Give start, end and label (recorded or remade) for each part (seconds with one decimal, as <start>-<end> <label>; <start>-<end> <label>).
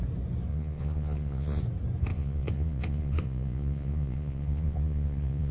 0.0-0.5 recorded; 0.5-1.6 remade; 1.6-2.1 recorded; 2.1-5.5 remade